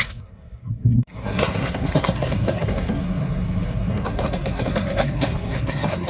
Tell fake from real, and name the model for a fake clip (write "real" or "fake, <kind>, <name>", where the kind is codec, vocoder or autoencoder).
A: fake, codec, SNAC